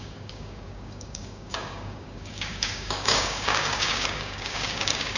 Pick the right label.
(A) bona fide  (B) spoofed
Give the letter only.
B